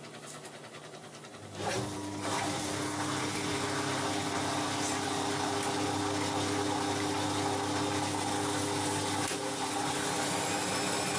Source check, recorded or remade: recorded